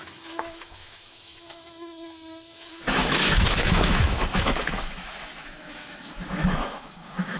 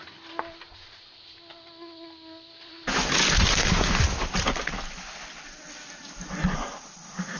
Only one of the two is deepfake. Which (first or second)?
first